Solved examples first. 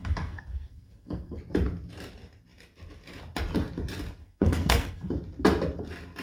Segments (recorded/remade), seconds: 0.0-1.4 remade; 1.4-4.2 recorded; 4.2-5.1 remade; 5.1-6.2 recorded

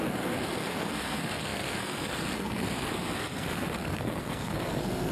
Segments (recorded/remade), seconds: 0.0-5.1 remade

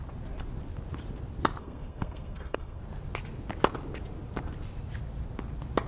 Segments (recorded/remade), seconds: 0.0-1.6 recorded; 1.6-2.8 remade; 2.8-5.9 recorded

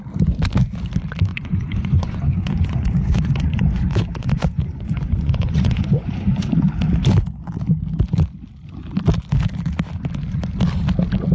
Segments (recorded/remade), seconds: 0.0-1.3 recorded; 1.3-6.5 remade; 6.5-11.3 recorded

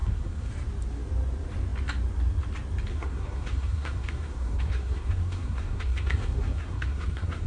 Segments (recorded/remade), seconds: 0.0-0.5 remade; 0.5-2.9 recorded; 2.9-7.5 remade

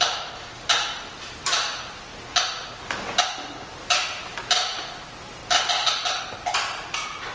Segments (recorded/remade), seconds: 0.0-5.4 remade; 5.4-6.2 recorded; 6.2-7.3 remade

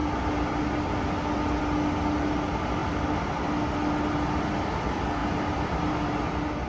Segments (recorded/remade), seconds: 0.0-6.7 recorded

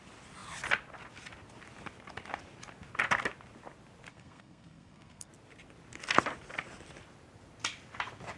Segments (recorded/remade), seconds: 0.0-4.1 recorded; 4.1-5.3 remade; 5.3-8.4 recorded